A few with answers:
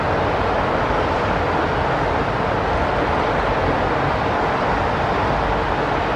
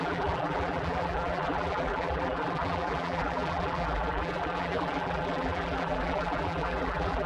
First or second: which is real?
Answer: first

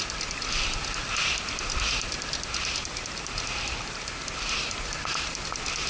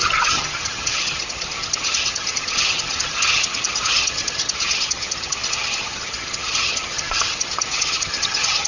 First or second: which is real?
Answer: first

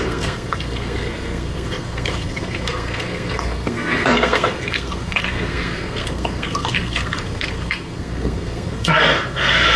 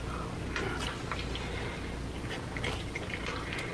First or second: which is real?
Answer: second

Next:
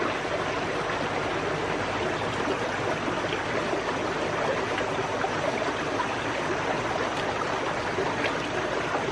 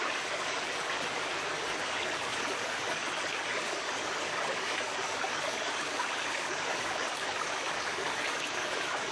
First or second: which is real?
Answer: first